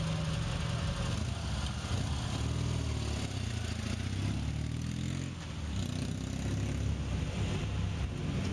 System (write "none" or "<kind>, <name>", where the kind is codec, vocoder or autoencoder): none